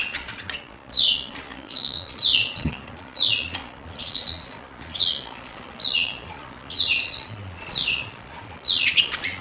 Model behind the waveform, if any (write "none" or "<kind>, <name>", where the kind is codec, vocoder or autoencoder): vocoder, Vocos